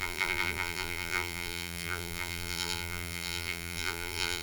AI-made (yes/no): yes